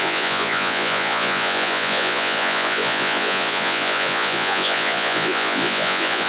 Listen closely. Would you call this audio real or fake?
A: fake